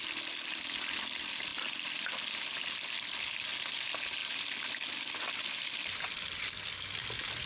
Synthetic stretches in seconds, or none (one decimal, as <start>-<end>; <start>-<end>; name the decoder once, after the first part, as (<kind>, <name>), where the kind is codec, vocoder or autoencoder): none